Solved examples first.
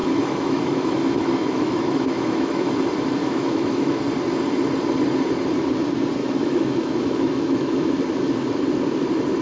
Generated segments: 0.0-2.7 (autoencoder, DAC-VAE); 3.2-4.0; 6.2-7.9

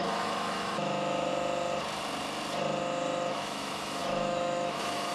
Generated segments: 0.0-1.3 (autoencoder, DAC-VAE); 3.3-5.1

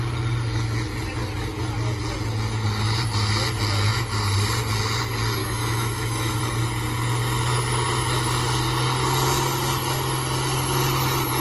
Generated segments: 5.4-6.4 (autoencoder, DAC-VAE)

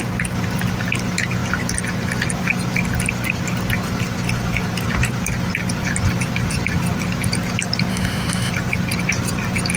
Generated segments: 7.9-8.5 (autoencoder, DAC-VAE)

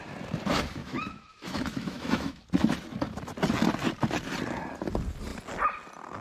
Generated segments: 0.8-2.4 (autoencoder, DAC-VAE)

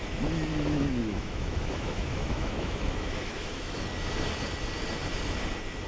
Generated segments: 0.5-3.8 (autoencoder, DAC-VAE)

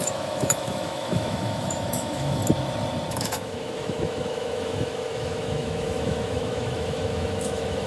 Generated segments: 0.0-2.4 (autoencoder, DAC-VAE); 3.1-7.9

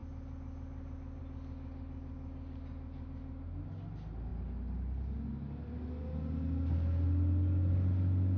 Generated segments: none